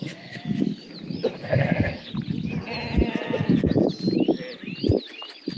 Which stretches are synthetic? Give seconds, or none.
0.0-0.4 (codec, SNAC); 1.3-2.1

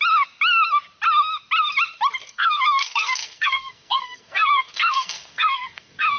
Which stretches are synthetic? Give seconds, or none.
2.2-6.2 (codec, SNAC)

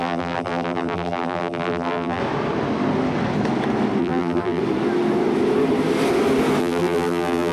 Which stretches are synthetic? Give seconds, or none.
0.0-2.2 (vocoder, BigVGAN v2); 4.0-4.6; 6.6-7.5

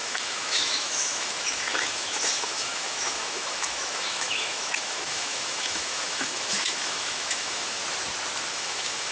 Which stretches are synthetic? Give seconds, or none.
0.0-7.8 (autoencoder, DAC-VAE); 8.5-9.1

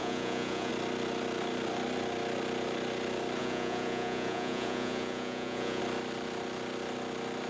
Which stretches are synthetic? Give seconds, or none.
0.0-0.7 (vocoder, Vocos); 3.4-5.8